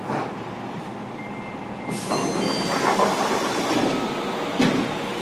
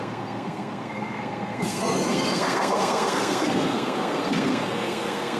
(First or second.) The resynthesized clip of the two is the second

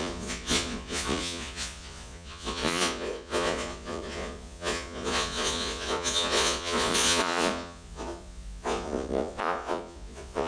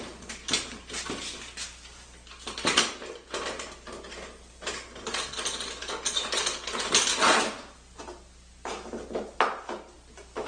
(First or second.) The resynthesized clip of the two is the first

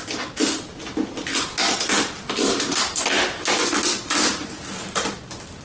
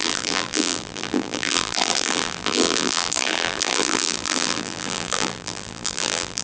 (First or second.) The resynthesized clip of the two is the second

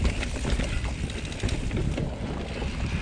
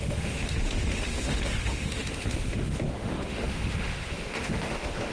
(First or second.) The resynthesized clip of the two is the second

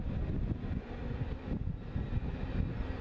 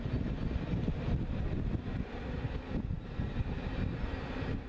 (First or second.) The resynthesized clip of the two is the second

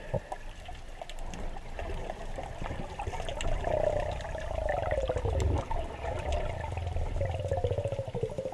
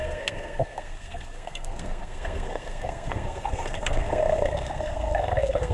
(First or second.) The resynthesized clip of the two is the second